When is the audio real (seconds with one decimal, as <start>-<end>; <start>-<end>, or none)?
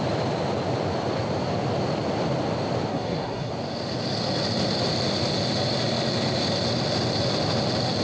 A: 0.0-2.9; 3.5-8.0